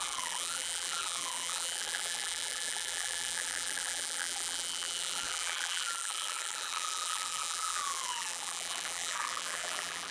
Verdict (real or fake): fake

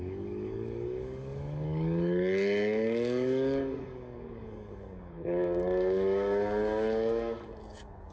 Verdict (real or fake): fake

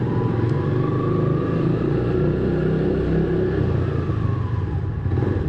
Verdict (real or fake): real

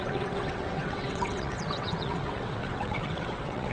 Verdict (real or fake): fake